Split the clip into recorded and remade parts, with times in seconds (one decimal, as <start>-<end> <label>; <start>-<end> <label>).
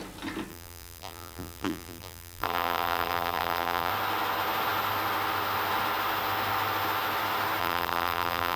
0.0-0.5 recorded; 0.5-3.9 remade; 3.9-7.6 recorded; 7.6-8.6 remade